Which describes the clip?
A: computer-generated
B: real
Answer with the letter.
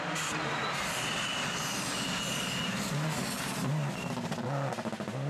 B